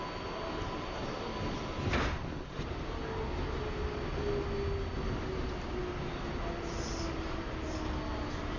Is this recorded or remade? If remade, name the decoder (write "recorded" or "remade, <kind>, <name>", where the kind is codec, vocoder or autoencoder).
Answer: recorded